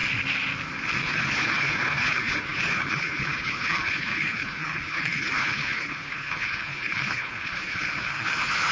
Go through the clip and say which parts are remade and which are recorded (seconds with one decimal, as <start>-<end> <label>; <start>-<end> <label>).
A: 0.0-1.0 recorded; 1.0-8.7 remade